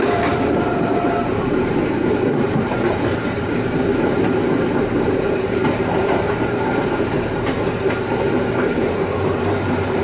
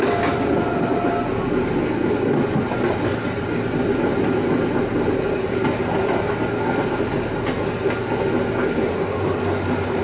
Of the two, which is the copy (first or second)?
first